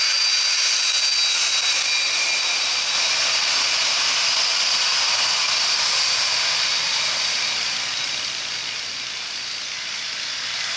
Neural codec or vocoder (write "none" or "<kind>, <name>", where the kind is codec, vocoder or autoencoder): none